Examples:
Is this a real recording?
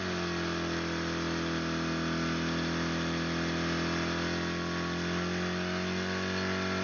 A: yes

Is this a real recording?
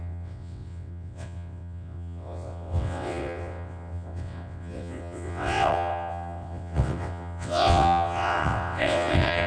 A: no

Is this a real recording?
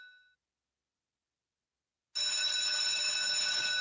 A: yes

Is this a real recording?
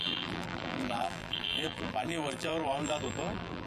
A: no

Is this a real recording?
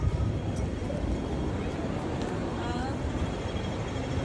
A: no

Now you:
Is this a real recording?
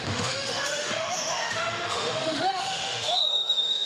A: no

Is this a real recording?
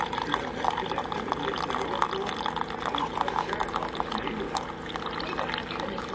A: yes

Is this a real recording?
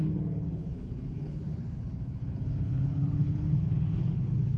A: no